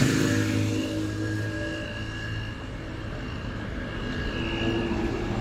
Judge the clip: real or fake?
real